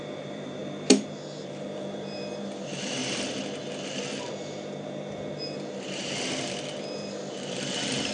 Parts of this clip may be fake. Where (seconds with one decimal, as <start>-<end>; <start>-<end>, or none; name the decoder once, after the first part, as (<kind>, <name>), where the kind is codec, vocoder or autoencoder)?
0.0-0.6 (vocoder, BigVGAN v2); 1.4-3.0; 6.3-8.1